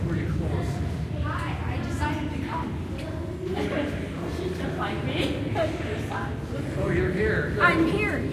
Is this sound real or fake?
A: real